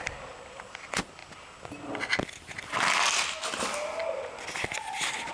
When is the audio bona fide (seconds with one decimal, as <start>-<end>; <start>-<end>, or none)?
0.0-5.3

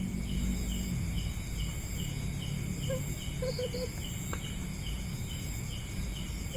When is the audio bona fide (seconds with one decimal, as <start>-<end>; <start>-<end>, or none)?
0.0-5.1; 5.6-6.6

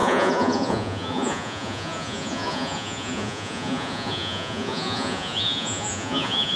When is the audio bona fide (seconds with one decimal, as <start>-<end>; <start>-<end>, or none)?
none

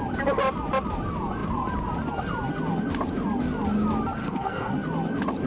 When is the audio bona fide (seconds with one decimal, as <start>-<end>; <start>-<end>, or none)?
0.0-4.2; 4.7-5.5